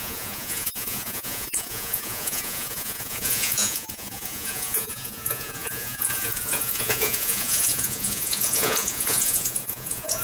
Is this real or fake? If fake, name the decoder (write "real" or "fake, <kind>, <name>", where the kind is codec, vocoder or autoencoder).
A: fake, vocoder, Vocos